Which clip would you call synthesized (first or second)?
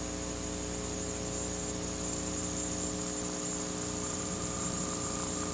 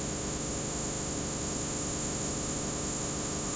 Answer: second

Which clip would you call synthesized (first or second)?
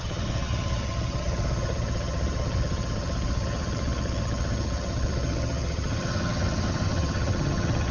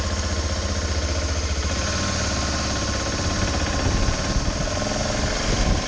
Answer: first